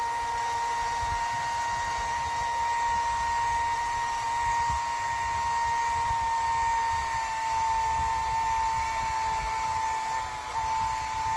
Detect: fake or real real